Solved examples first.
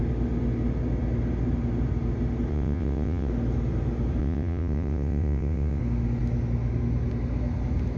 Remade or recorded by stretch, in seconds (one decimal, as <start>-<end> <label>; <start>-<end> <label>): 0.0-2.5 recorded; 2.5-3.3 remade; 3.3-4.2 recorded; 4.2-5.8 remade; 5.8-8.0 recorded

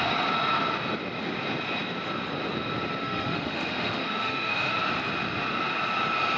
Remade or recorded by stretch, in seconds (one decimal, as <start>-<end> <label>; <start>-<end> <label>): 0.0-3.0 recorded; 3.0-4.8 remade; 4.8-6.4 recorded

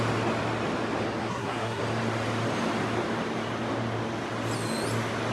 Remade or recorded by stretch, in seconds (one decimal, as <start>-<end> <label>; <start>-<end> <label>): 0.0-1.2 recorded; 1.2-1.8 remade; 1.8-5.3 recorded